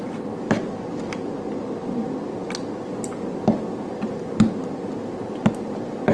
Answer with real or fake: real